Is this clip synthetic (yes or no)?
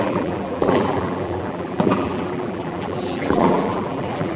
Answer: yes